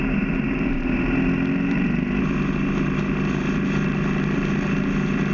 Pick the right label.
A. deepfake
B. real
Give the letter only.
B